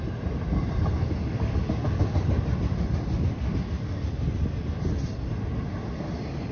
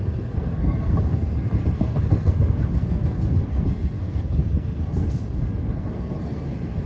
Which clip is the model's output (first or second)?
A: second